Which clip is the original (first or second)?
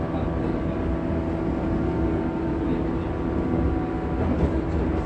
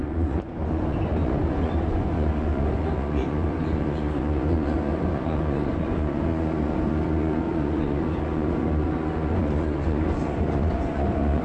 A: first